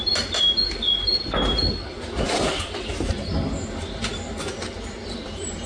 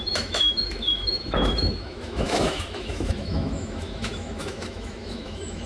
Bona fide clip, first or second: first